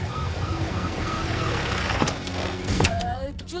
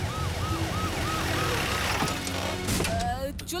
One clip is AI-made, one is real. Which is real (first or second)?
second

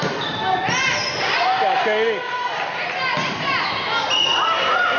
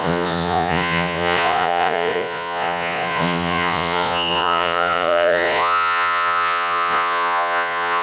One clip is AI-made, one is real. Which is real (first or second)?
first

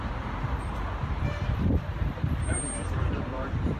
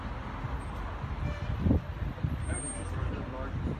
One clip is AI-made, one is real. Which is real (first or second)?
second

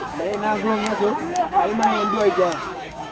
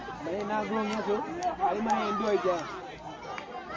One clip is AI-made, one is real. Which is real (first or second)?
second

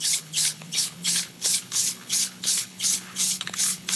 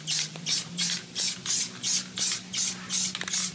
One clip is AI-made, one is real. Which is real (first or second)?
second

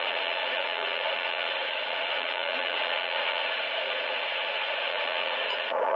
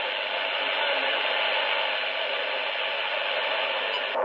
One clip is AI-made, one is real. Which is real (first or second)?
second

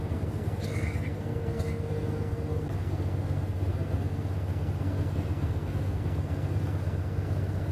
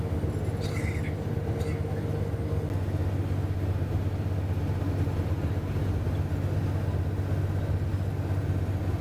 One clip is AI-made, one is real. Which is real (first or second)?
second